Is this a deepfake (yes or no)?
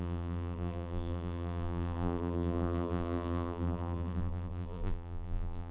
yes